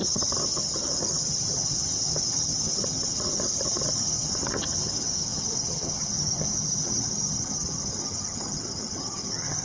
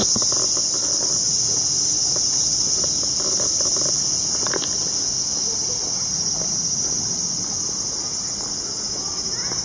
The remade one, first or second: first